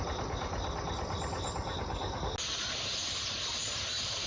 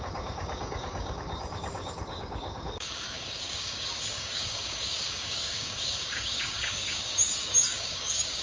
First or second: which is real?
first